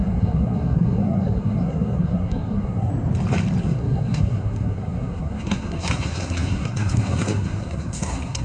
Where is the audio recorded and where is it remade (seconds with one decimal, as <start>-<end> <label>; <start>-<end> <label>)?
0.0-2.9 remade; 2.9-3.6 recorded; 3.6-8.4 remade